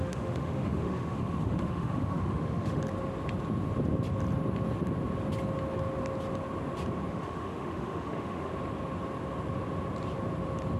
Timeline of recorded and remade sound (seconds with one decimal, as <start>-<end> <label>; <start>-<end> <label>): 0.0-2.8 remade; 2.8-7.1 recorded; 7.1-8.5 remade; 8.5-10.8 recorded